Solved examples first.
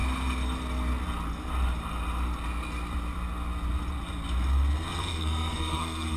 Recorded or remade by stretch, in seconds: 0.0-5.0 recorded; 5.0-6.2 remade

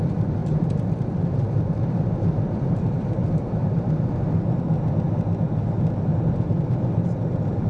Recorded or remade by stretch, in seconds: 0.0-0.4 recorded; 0.4-4.6 remade; 4.6-6.1 recorded; 6.1-7.7 remade

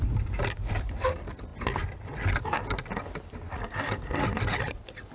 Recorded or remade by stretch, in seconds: 0.0-5.1 recorded

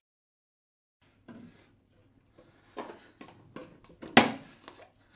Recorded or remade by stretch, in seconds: 0.0-5.2 recorded

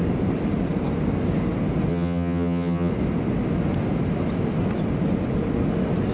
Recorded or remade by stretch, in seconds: 0.0-1.9 recorded; 1.9-2.9 remade; 2.9-6.1 recorded

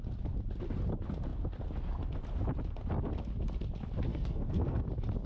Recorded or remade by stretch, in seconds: 0.0-4.1 recorded; 4.1-4.8 remade; 4.8-5.3 recorded

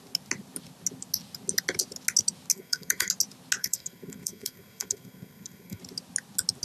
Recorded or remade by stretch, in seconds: 0.0-2.5 recorded; 2.5-3.1 remade; 3.1-3.6 recorded; 3.6-5.8 remade; 5.8-6.6 recorded